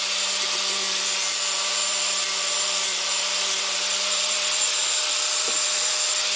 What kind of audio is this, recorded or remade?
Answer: remade